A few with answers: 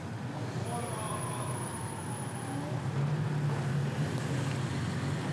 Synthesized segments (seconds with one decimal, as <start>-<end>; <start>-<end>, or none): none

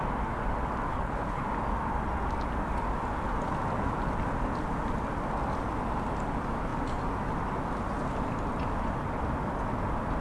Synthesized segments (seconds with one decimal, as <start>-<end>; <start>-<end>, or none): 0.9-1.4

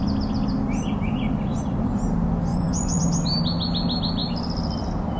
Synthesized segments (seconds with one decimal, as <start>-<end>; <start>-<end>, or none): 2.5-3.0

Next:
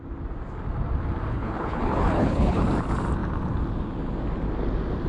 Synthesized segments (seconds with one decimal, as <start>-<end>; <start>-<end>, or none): 1.3-2.6

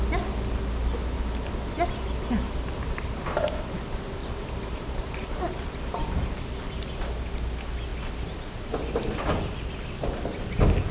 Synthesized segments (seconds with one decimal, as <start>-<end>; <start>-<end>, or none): 4.2-6.1